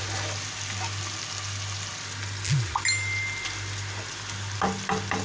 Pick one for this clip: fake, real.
real